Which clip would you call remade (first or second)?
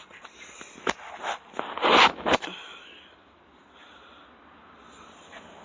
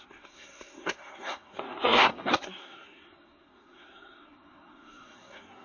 second